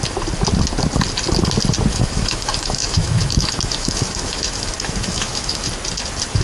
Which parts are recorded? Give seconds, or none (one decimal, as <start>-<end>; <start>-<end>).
0.0-1.9; 5.7-6.4